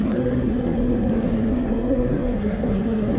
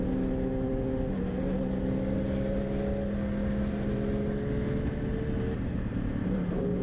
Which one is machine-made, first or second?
first